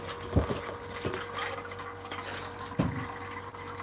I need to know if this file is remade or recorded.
recorded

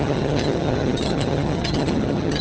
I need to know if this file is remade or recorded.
remade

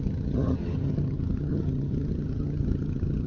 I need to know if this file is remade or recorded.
remade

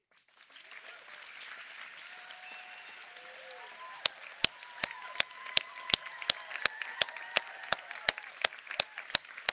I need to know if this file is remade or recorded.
recorded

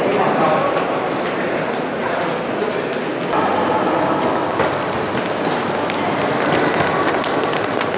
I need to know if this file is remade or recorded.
recorded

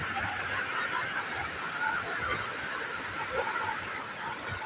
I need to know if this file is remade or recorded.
recorded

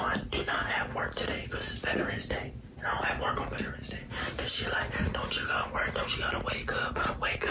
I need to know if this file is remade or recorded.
recorded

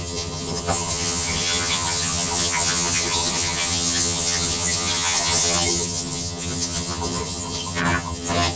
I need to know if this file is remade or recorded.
remade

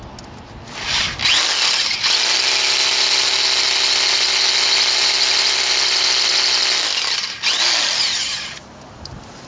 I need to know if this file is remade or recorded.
recorded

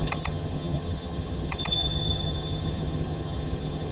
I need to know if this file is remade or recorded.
remade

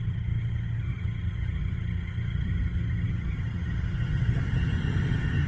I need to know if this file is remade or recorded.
remade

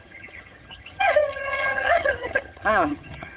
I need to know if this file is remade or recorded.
remade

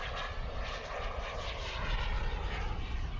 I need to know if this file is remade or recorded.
recorded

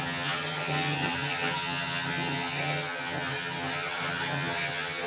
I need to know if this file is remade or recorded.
remade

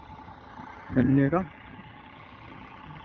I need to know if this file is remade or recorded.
remade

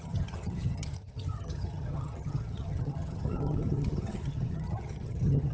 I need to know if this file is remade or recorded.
remade